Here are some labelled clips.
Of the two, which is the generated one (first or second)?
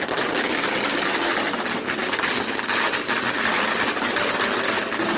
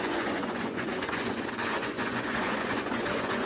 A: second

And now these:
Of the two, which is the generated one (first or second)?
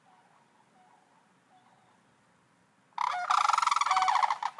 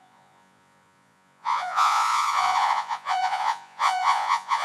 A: second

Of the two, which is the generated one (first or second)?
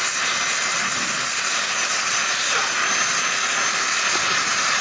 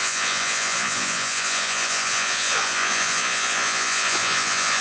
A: second